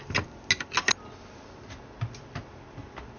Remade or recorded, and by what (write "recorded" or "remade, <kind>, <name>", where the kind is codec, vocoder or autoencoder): recorded